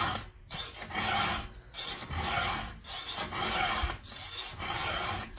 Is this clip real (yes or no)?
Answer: yes